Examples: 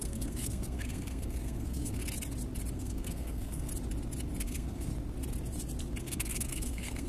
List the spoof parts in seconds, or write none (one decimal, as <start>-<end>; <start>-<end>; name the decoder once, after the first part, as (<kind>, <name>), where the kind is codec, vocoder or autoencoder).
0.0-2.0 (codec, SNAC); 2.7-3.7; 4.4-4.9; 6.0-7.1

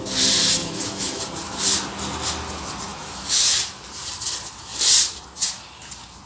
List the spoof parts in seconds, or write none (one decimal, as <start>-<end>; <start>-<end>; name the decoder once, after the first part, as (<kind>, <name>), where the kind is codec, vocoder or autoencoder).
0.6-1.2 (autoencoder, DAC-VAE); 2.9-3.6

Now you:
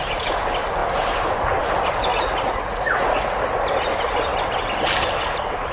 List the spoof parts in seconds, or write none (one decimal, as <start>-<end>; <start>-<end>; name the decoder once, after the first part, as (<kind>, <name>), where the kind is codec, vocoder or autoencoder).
2.1-3.4 (vocoder, Vocos)